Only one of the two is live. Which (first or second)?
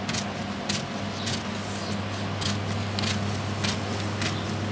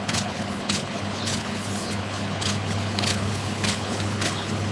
first